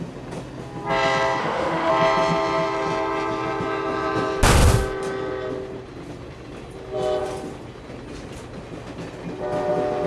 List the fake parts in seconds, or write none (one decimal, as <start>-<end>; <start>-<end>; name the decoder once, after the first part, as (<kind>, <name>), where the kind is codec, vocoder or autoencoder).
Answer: 1.4-1.9 (autoencoder, DAC-VAE)